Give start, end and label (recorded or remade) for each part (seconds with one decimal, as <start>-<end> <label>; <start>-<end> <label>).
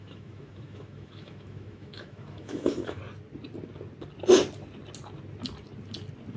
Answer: 0.0-3.0 remade; 3.0-6.4 recorded